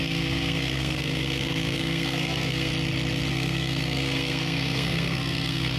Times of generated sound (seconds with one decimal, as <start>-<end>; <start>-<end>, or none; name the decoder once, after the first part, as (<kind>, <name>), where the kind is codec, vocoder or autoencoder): 0.0-2.7 (codec, SNAC); 3.3-5.8